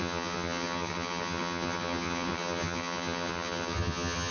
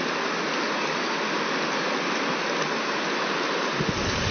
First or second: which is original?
second